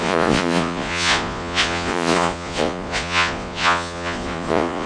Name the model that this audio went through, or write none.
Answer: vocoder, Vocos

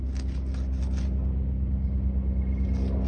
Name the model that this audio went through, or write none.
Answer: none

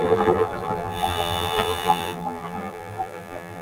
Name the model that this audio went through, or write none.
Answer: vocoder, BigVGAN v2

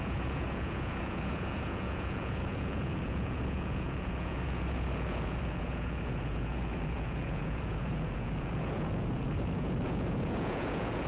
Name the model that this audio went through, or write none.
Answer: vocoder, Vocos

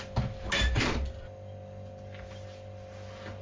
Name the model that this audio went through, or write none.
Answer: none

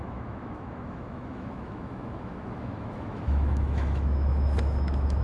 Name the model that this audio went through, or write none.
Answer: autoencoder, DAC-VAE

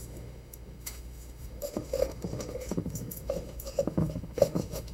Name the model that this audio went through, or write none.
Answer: autoencoder, DAC-VAE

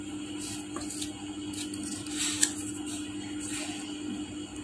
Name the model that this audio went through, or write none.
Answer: none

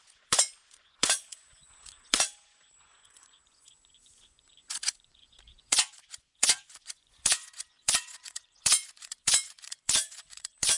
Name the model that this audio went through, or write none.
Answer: vocoder, Vocos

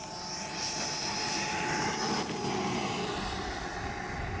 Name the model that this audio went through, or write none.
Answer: none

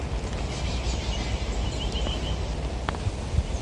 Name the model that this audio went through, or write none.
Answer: none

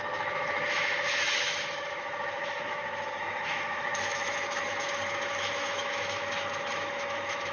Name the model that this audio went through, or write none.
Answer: autoencoder, DAC-VAE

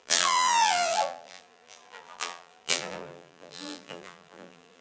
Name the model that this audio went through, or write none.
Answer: vocoder, BigVGAN v2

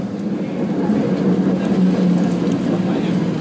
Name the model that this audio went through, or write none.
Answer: none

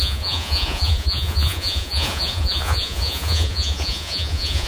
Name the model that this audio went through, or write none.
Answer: vocoder, Vocos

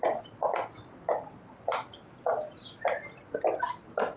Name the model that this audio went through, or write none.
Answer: none